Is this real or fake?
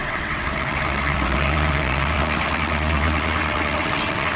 fake